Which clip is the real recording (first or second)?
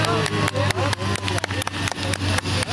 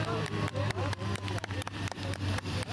first